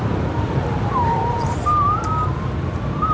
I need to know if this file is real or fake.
fake